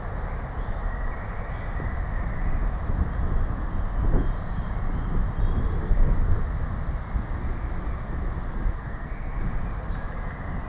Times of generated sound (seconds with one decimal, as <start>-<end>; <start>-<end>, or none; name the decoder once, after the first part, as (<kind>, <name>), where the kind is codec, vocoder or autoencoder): 5.8-6.4 (codec, SNAC); 8.7-9.4